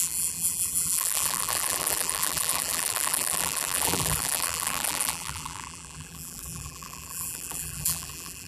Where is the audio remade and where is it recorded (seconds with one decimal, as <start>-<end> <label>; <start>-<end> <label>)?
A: 0.0-8.5 remade